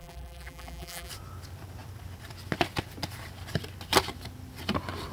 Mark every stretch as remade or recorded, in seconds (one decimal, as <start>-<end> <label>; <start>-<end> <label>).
0.0-1.1 remade; 1.1-5.1 recorded